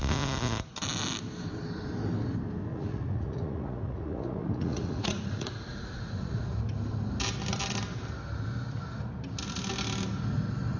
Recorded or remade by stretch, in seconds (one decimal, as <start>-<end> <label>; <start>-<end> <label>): 0.0-2.7 recorded; 2.7-6.4 remade; 6.4-10.8 recorded